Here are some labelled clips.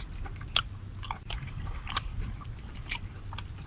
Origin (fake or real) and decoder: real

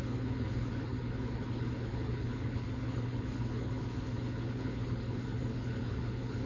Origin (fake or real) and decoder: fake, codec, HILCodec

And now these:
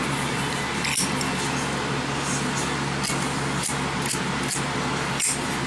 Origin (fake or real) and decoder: real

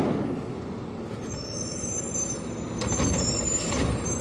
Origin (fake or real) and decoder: real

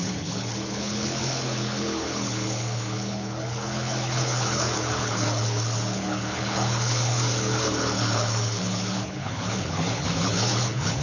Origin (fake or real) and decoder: fake, codec, HILCodec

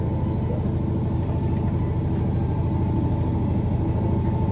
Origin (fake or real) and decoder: real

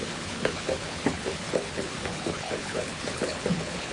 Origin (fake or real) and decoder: fake, codec, HILCodec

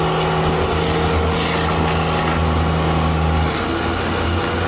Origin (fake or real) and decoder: real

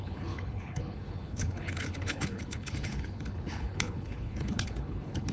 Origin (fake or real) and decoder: fake, codec, HILCodec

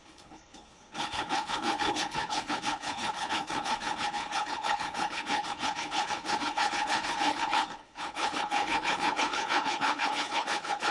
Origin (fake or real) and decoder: fake, codec, HILCodec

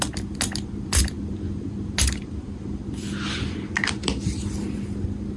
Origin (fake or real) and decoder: real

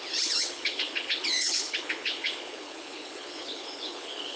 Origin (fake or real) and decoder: fake, codec, HILCodec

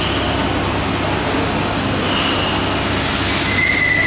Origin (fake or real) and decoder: real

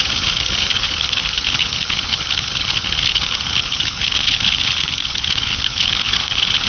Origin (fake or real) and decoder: fake, codec, HILCodec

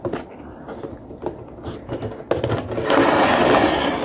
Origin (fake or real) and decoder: real